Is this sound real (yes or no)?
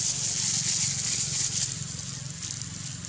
yes